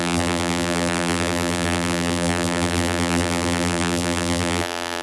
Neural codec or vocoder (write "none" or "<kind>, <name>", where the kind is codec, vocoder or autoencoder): vocoder, BigVGAN v2